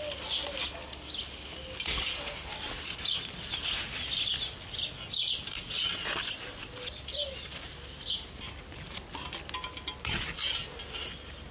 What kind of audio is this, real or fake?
real